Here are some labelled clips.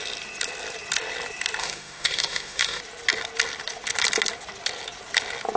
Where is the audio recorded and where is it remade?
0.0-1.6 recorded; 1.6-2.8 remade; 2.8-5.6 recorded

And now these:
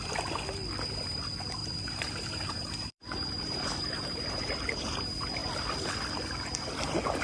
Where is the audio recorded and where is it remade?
0.0-1.6 recorded; 1.6-5.0 remade; 5.0-7.2 recorded

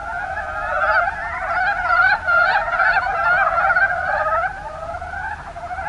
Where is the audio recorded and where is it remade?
0.0-5.9 recorded

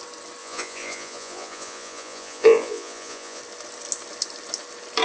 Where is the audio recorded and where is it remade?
0.0-0.4 recorded; 0.4-3.4 remade; 3.4-5.0 recorded

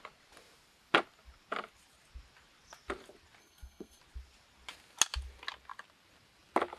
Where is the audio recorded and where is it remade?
0.0-3.4 recorded; 3.4-4.0 remade; 4.0-6.8 recorded

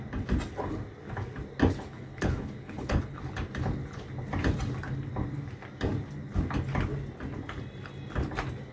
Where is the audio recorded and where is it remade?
0.0-1.9 recorded; 1.9-3.2 remade; 3.2-8.7 recorded

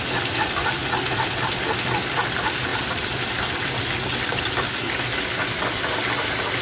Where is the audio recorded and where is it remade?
0.0-6.6 recorded